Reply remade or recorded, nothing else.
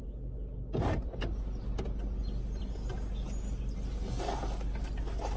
recorded